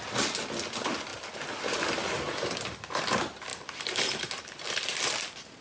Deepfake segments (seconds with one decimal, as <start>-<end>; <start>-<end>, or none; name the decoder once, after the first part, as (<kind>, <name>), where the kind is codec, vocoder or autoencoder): 1.1-3.0 (vocoder, BigVGAN v2); 3.5-4.3